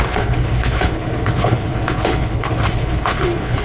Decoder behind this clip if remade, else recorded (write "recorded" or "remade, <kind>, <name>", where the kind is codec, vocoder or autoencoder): remade, codec, HILCodec